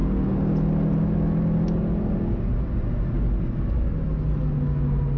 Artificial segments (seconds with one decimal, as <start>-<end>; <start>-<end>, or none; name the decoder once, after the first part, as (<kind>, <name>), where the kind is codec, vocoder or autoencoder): none